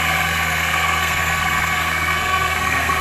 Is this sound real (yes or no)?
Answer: no